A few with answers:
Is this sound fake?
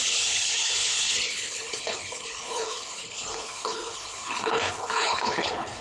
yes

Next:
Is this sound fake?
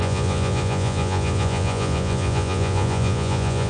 yes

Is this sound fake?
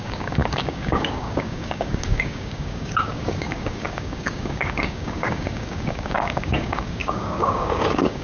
yes